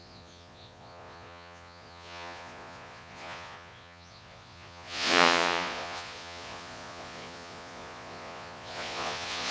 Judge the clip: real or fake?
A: fake